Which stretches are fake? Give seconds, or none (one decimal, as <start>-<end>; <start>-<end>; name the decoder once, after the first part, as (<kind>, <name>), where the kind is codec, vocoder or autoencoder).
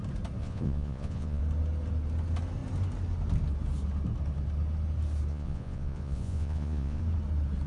0.4-1.4 (vocoder, Vocos); 5.3-7.0